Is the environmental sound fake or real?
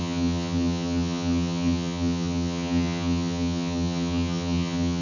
fake